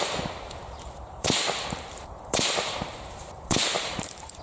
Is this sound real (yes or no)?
no